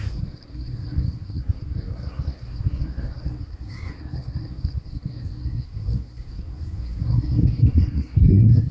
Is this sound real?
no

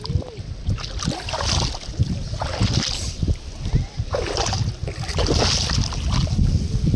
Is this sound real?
yes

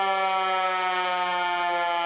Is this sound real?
yes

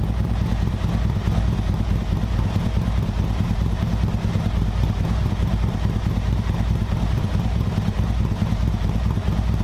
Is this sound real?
no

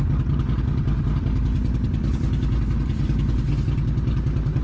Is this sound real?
yes